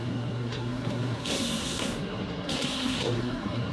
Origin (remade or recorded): remade